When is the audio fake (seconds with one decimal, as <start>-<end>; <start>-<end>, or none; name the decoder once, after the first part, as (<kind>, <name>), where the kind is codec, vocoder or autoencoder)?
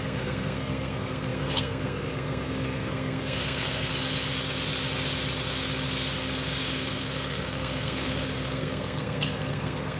0.0-3.9 (codec, SNAC); 6.6-10.0